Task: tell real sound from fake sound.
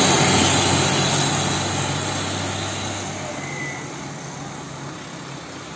real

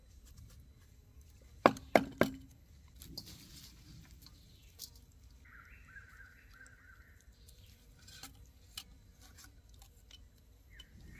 real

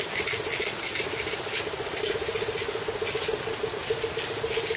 real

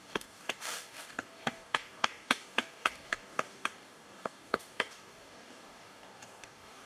fake